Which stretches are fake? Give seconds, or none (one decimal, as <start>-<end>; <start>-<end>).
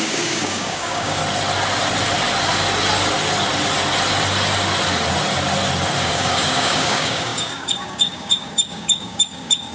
0.0-1.2; 6.0-9.7